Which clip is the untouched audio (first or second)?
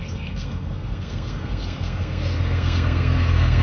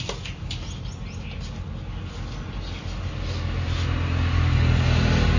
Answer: second